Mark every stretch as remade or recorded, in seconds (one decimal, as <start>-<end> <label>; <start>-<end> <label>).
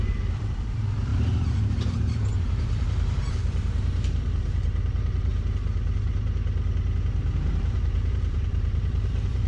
0.0-5.3 remade; 5.3-7.5 recorded; 7.5-9.5 remade